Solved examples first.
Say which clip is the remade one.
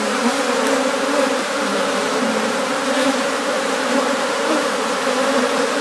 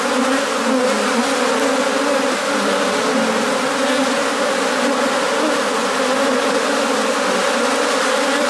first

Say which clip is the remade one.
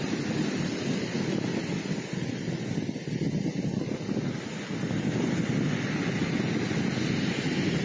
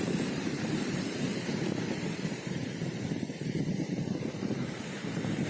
second